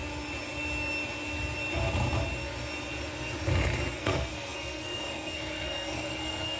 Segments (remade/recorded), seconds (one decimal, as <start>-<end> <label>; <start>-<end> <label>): 0.0-4.0 recorded; 4.0-6.6 remade